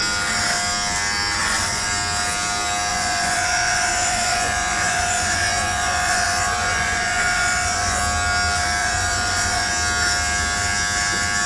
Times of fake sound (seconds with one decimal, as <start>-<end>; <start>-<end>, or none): 1.4-1.9; 2.9-8.0; 8.8-9.7